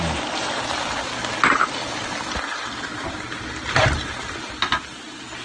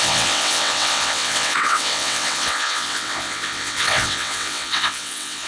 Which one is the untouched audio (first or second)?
first